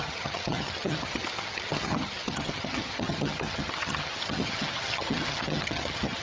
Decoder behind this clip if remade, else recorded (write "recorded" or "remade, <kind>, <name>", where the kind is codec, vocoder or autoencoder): remade, vocoder, HiFi-GAN